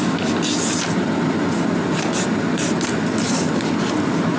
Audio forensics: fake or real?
real